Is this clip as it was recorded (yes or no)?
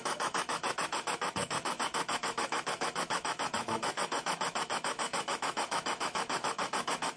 no